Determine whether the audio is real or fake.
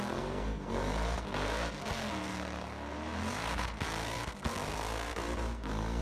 fake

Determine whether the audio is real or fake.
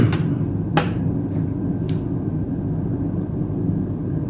real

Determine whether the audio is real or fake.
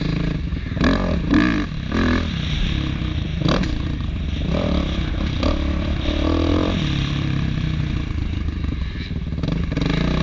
fake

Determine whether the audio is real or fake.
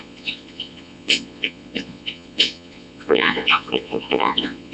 fake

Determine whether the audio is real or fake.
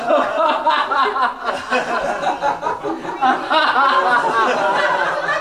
real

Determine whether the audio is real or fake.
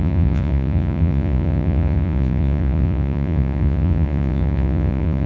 fake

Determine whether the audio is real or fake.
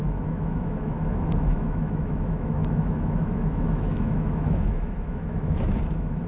fake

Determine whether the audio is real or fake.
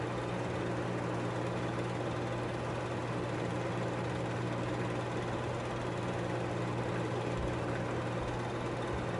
real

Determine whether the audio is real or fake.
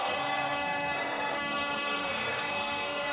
fake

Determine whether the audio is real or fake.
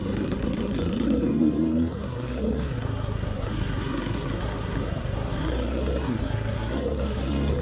fake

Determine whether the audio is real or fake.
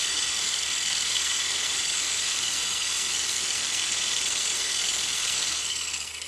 fake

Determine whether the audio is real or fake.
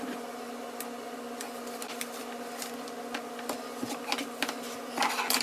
real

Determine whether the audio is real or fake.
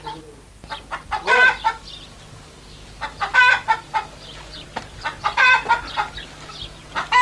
real